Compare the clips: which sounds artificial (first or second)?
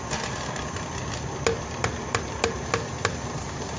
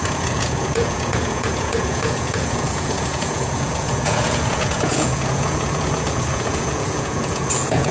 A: second